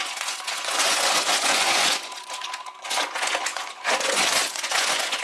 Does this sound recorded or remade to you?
remade